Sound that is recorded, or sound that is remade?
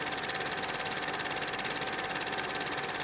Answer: recorded